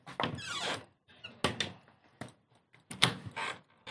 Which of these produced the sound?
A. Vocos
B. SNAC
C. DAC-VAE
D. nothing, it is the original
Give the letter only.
D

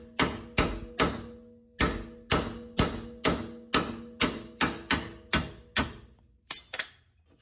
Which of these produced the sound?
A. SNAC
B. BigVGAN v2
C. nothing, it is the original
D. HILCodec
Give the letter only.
C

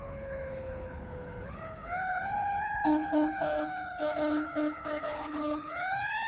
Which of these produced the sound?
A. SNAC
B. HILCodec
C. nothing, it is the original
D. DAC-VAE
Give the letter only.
B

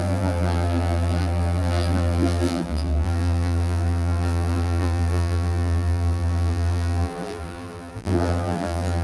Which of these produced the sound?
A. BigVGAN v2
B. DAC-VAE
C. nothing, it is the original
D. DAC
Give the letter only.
A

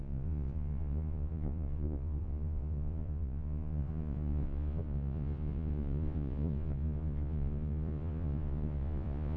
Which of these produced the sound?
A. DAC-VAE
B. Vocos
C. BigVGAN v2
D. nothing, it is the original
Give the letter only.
B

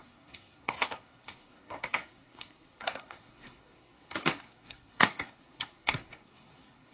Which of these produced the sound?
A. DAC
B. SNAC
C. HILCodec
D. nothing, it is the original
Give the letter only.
B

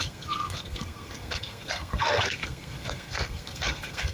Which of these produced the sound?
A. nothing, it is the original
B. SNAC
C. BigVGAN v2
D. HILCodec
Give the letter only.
B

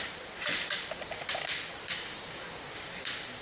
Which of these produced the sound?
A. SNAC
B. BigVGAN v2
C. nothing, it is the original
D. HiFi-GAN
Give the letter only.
C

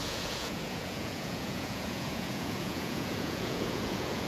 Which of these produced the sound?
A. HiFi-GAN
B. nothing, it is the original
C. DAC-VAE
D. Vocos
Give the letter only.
D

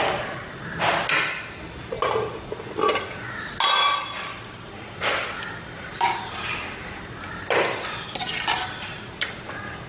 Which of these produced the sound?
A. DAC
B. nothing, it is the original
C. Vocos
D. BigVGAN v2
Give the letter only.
B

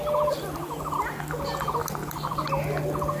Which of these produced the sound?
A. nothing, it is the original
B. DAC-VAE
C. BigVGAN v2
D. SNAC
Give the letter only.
A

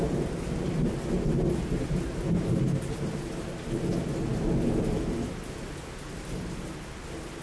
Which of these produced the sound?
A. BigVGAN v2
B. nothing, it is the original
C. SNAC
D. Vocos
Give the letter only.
B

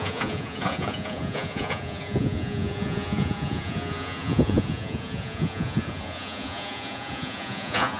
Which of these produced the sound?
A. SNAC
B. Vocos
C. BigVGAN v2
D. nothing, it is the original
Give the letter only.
B